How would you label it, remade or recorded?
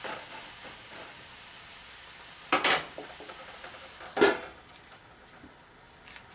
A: recorded